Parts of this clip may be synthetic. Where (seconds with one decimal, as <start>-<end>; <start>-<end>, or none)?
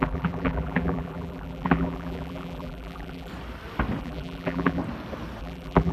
0.0-3.3; 4.0-4.8; 5.4-5.9